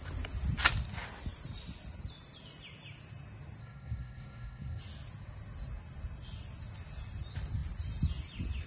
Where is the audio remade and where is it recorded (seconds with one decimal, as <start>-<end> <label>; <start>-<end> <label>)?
0.0-3.6 recorded; 3.6-4.8 remade; 4.8-8.7 recorded